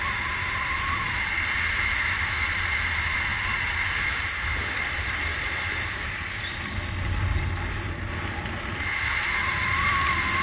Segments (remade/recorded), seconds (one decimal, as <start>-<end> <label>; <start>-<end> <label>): 0.0-5.3 recorded; 5.3-6.1 remade; 6.1-10.4 recorded